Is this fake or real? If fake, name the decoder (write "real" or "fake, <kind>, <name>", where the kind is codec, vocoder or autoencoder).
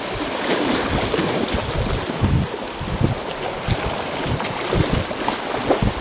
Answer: real